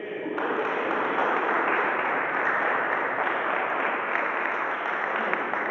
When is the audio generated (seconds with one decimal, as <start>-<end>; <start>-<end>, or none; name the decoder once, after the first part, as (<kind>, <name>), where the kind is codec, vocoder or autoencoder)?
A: 1.2-4.6 (vocoder, BigVGAN v2)